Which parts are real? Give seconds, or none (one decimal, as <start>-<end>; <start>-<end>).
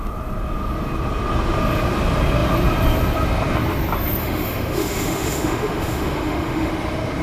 0.0-4.2; 6.7-7.2